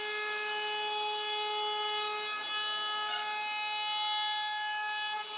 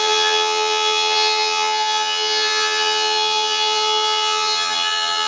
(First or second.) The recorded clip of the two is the first